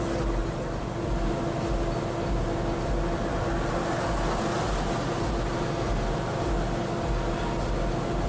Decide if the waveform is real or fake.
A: real